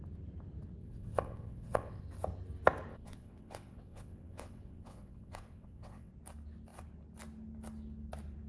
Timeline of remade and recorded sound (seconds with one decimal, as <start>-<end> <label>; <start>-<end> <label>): 0.0-0.8 recorded; 0.8-2.0 remade; 2.0-2.9 recorded; 2.9-6.1 remade; 6.1-8.5 recorded